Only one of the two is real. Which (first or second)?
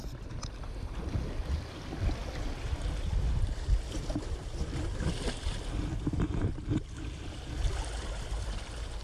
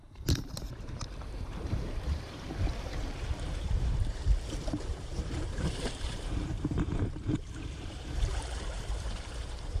first